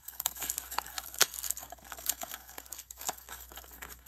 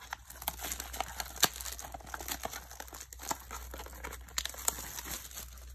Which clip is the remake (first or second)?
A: first